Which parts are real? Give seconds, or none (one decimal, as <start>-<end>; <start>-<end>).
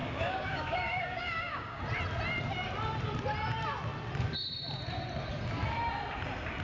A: 1.8-6.6